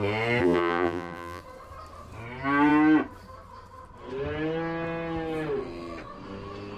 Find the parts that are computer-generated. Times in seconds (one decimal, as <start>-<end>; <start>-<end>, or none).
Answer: 0.4-1.4